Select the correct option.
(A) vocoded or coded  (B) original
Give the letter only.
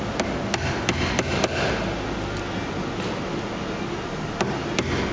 B